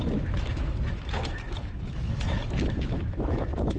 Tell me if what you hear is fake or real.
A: fake